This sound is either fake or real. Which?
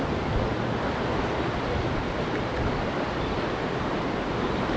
real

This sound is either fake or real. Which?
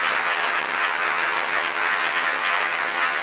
fake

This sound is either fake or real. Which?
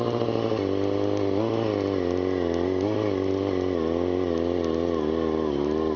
real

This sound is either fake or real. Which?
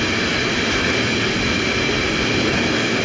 real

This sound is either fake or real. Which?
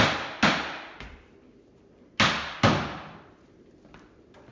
real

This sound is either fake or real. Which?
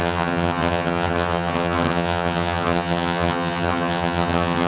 fake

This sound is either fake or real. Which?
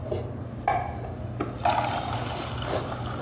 real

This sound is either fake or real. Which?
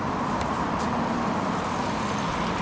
real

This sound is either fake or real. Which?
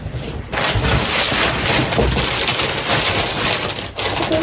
real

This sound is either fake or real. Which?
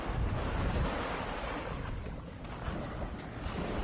real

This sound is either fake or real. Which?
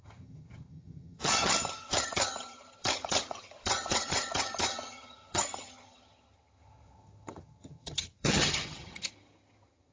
fake